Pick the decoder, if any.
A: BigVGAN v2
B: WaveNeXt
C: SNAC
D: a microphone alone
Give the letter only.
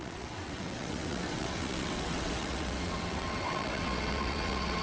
B